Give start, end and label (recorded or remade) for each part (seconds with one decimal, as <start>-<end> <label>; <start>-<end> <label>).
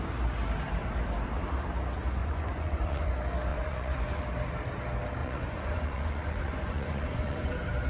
0.0-2.2 recorded; 2.2-3.1 remade; 3.1-3.5 recorded; 3.5-4.2 remade; 4.2-5.2 recorded; 5.2-7.5 remade; 7.5-7.9 recorded